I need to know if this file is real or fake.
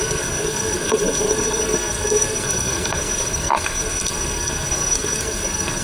fake